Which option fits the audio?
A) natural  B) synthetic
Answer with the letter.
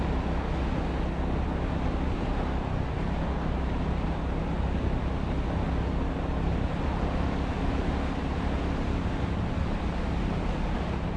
A